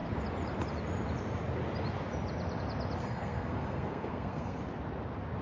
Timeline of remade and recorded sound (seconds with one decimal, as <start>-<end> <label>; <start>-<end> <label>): 0.0-3.0 recorded; 3.0-4.6 remade; 4.6-5.4 recorded